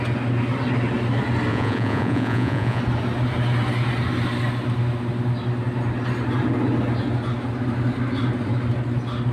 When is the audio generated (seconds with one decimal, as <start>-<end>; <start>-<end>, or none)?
1.5-2.8